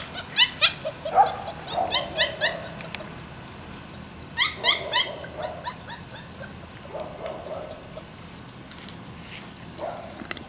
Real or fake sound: real